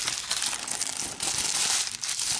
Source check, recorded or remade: recorded